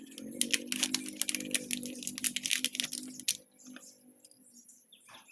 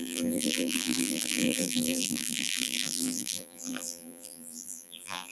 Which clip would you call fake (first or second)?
second